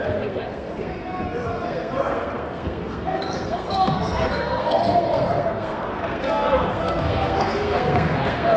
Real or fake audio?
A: fake